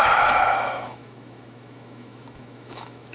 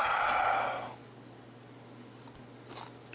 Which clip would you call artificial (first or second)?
first